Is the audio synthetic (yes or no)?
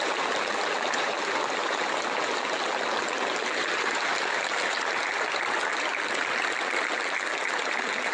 yes